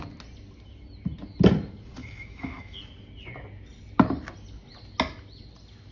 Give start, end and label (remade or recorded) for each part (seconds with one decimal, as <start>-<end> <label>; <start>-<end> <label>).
0.0-2.0 recorded; 2.0-2.8 remade; 2.8-5.9 recorded